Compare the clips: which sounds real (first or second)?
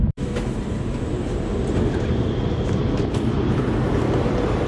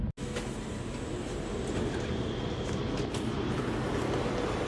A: second